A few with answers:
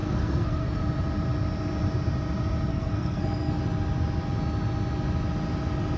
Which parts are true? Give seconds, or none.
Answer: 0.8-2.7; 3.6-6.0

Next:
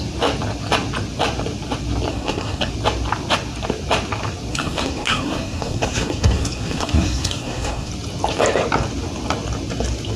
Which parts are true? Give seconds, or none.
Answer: 0.0-2.1; 2.7-4.5; 7.9-10.2

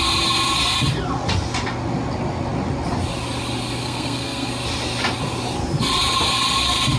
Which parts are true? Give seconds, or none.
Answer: 0.0-3.8; 4.5-7.0